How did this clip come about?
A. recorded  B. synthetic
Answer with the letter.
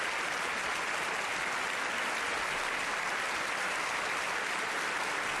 A